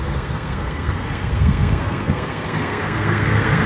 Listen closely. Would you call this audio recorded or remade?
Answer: remade